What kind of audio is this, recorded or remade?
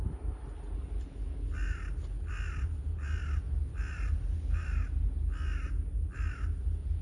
recorded